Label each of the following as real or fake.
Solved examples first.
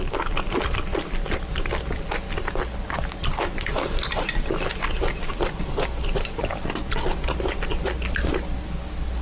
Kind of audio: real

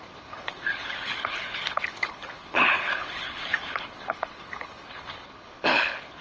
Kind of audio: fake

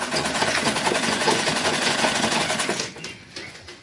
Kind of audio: fake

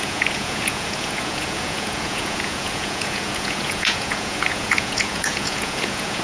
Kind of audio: fake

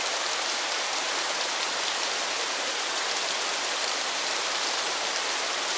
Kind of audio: real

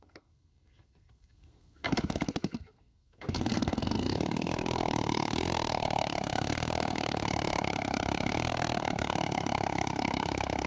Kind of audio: fake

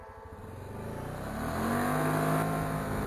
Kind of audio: real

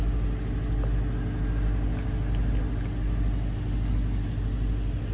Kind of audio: real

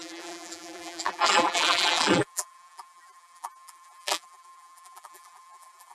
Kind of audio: fake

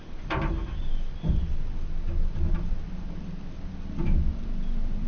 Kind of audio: real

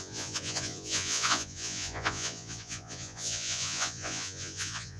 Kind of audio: fake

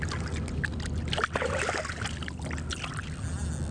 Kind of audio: real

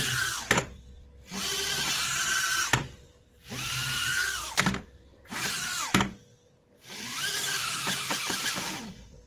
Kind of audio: fake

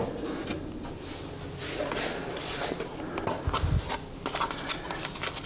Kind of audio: real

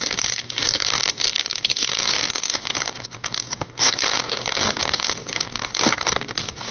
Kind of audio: fake